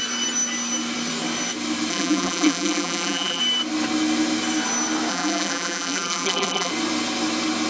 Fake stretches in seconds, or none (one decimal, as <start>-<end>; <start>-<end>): 1.9-3.4; 5.1-6.7